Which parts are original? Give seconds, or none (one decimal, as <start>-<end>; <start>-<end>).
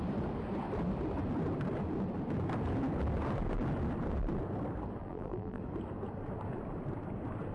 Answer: 0.0-5.0; 5.6-7.5